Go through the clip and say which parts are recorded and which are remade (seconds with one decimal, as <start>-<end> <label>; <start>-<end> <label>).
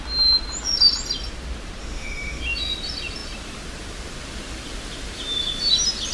0.0-1.8 recorded; 1.8-2.4 remade; 2.4-6.1 recorded